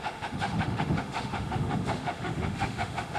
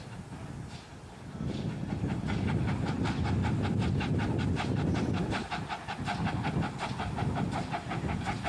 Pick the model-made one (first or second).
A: first